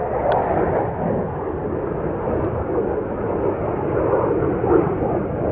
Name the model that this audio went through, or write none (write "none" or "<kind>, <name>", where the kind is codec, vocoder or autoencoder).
none